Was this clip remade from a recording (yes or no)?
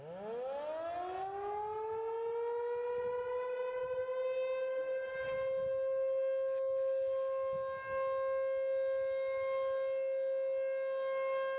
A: no